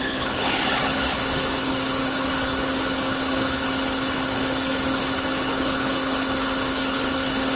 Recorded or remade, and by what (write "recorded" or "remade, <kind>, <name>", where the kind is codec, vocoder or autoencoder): remade, codec, HILCodec